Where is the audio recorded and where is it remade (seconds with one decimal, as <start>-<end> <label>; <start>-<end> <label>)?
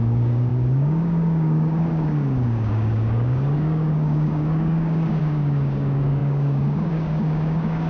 0.0-7.9 remade